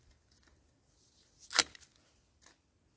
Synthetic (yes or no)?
no